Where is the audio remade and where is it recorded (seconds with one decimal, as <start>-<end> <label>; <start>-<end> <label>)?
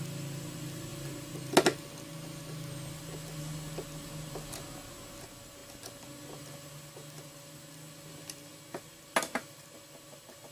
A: 0.0-10.5 recorded